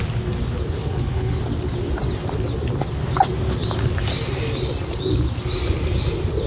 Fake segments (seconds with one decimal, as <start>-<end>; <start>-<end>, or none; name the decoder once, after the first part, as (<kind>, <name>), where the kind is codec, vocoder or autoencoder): 0.8-1.4 (codec, HILCodec)